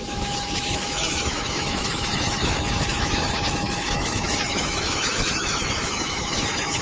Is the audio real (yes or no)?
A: no